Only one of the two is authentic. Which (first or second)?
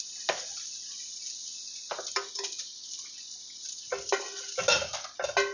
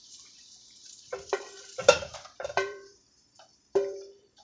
first